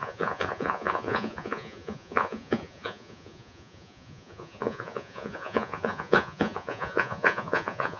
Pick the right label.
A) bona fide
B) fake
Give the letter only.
B